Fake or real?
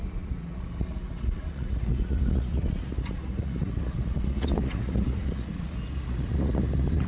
fake